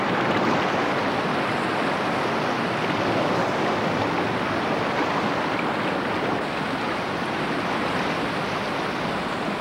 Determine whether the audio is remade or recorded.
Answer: recorded